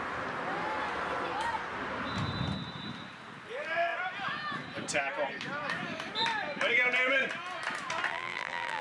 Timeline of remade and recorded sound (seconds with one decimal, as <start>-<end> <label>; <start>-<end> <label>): 0.0-8.1 recorded; 8.1-8.8 remade